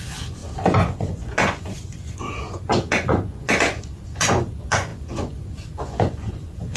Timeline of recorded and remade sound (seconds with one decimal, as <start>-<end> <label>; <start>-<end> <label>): 0.0-6.8 remade